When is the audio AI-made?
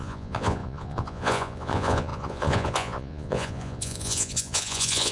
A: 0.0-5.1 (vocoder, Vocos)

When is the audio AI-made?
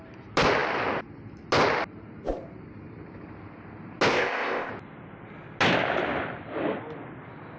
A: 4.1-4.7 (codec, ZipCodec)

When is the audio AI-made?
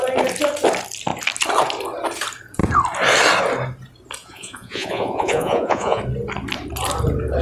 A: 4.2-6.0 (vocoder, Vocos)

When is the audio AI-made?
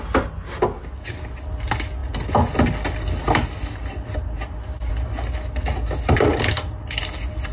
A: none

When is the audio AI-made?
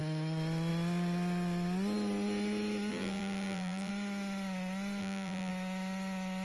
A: 2.9-3.9 (vocoder, BigVGAN v2); 5.0-5.5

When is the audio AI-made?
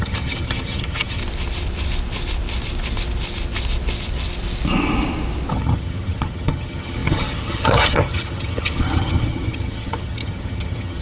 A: 0.0-1.2 (vocoder, HiFi-GAN); 5.5-11.0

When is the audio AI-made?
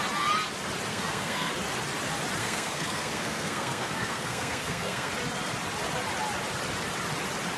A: 0.9-1.5 (codec, SNAC); 2.4-5.1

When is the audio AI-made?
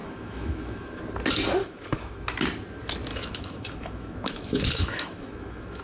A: 0.0-1.0 (autoencoder, DAC-VAE); 1.6-2.2; 3.1-5.8